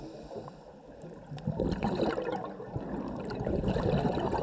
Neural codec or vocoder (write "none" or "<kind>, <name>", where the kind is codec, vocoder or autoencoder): none